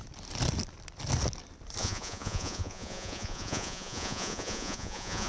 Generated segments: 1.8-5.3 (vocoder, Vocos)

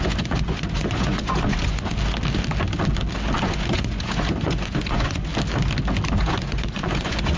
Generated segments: 0.0-1.9 (vocoder, Vocos); 3.4-5.3; 6.2-7.4

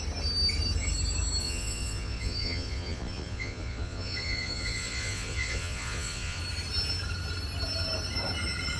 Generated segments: 1.4-6.4 (vocoder, Vocos)

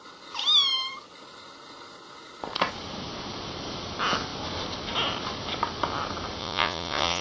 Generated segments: 6.4-7.2 (vocoder, Vocos)

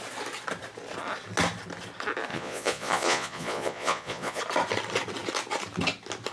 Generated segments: 2.3-4.4 (vocoder, Vocos)

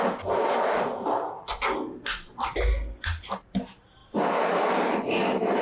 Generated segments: none

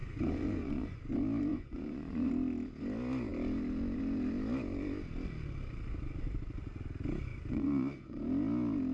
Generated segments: 0.0-1.0 (vocoder, Vocos); 1.5-2.3; 7.3-8.2